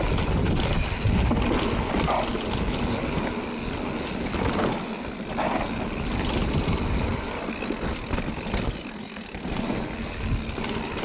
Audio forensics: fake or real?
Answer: real